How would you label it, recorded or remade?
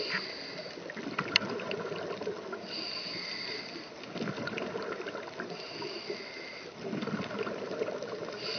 recorded